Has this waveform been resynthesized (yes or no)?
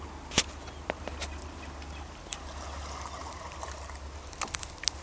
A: no